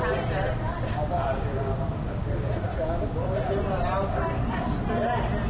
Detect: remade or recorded recorded